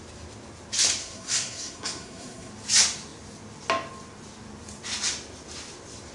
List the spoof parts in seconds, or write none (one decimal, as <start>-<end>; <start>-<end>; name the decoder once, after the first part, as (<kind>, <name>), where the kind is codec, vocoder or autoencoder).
1.0-2.5 (codec, SNAC)